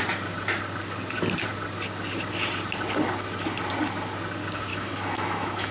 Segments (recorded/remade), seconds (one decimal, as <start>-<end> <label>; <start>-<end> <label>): 0.0-4.7 recorded; 4.7-5.7 remade